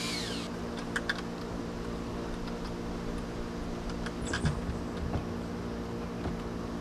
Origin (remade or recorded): recorded